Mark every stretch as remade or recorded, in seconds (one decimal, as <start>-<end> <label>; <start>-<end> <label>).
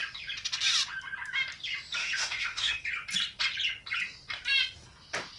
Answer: 0.0-2.0 recorded; 2.0-2.7 remade; 2.7-5.4 recorded